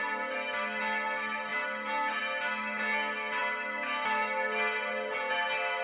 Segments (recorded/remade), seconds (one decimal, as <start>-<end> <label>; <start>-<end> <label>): 0.0-5.8 recorded